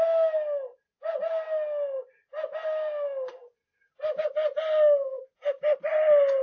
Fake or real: real